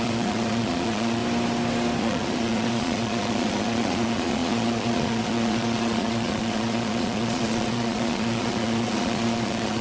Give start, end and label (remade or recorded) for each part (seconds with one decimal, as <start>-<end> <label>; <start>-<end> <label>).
0.0-1.2 remade; 1.2-2.0 recorded; 2.0-9.8 remade